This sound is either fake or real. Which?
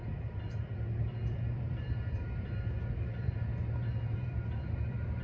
fake